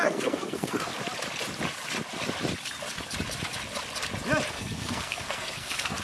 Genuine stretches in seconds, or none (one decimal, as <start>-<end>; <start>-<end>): 0.9-4.5